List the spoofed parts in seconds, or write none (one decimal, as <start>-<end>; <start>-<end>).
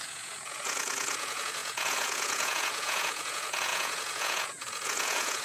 0.0-5.4